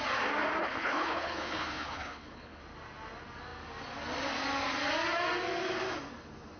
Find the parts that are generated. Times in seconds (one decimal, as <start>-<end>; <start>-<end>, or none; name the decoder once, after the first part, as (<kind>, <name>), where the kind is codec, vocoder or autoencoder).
0.6-2.6 (codec, HILCodec)